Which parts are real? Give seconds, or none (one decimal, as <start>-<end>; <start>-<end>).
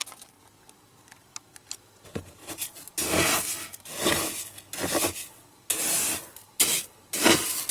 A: 0.0-7.7